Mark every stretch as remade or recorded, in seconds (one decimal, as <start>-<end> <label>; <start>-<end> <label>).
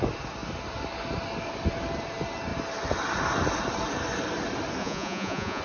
0.0-4.8 recorded; 4.8-5.6 remade